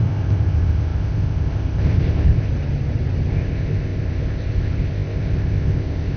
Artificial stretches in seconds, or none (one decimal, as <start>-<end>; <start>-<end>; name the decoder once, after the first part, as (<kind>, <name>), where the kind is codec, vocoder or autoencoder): 0.0-2.5 (codec, ZipCodec); 3.3-6.2